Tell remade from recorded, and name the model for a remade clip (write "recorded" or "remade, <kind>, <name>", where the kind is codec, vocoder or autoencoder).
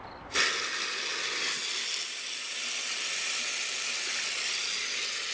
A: recorded